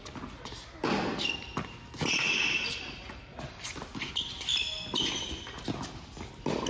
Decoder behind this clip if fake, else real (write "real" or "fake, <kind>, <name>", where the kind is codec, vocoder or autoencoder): real